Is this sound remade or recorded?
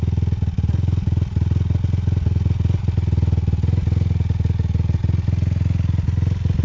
recorded